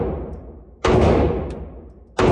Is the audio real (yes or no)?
yes